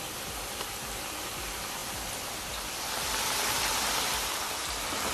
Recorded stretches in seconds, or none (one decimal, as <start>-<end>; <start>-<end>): 0.0-5.1